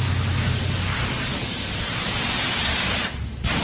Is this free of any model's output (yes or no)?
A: yes